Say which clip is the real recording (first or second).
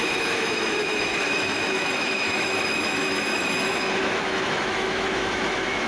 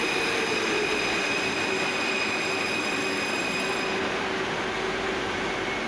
second